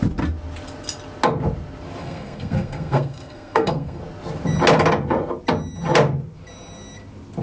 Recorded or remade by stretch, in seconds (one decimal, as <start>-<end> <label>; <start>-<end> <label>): 0.0-2.0 recorded; 2.0-4.0 remade; 4.0-7.4 recorded